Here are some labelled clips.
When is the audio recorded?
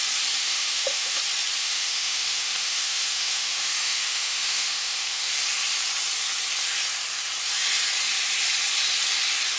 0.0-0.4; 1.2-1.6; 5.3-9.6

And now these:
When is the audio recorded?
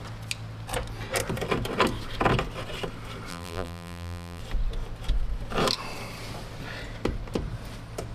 0.0-3.3; 4.4-8.1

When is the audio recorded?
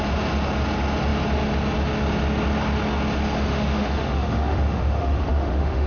0.0-3.5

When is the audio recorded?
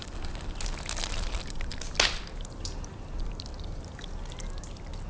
0.0-5.1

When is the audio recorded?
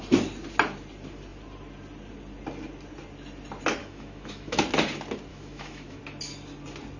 0.0-3.8; 4.6-5.3; 6.0-7.0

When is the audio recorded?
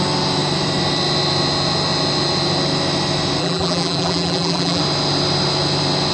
0.0-3.4; 4.8-6.1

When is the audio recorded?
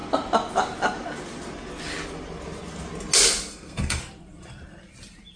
0.0-3.5; 4.0-5.4